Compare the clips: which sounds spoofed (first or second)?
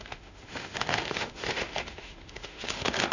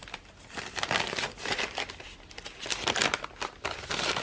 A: first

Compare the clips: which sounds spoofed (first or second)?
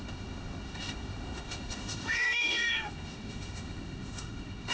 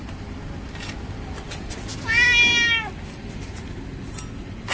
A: first